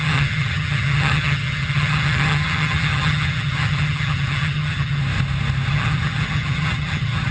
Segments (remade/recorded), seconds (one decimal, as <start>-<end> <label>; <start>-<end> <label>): 0.0-5.0 remade; 5.0-5.7 recorded; 5.7-7.3 remade